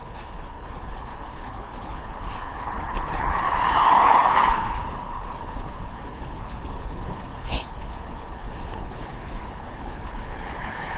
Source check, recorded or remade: remade